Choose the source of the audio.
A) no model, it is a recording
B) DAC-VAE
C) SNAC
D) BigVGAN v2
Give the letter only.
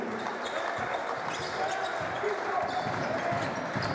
A